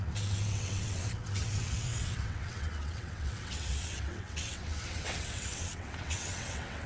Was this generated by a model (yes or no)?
yes